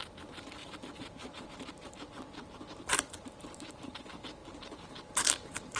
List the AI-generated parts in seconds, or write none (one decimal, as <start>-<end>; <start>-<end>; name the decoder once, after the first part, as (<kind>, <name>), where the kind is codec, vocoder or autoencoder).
0.6-4.0 (vocoder, BigVGAN v2); 4.4-5.8